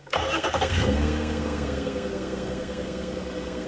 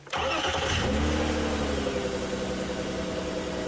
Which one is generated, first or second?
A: first